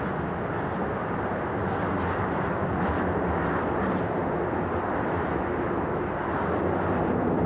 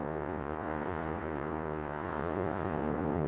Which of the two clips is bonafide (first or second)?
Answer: first